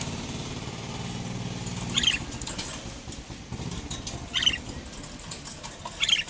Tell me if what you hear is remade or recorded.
recorded